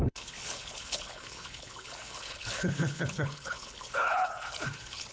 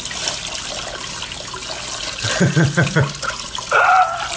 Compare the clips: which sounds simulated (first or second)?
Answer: first